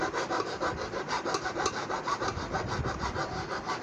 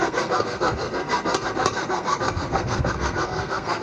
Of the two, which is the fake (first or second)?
second